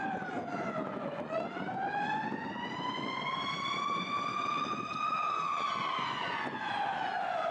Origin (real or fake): fake